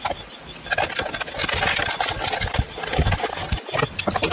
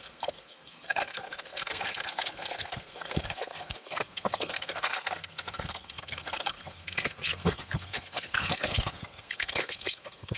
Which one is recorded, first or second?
first